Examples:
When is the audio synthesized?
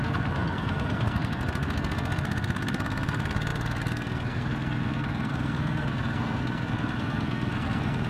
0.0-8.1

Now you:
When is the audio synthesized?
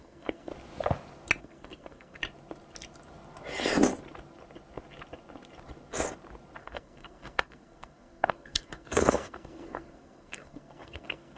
0.0-0.5; 1.4-2.2; 6.6-11.4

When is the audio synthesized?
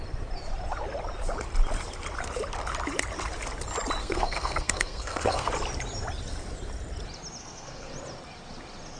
4.0-5.5; 7.4-7.9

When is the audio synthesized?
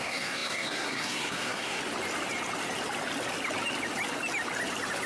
0.0-1.8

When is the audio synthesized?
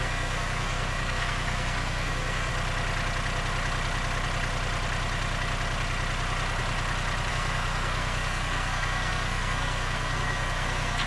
0.0-2.5; 7.3-11.1